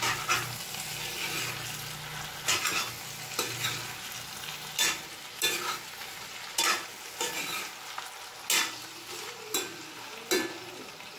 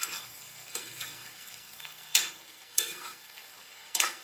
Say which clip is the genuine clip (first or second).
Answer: first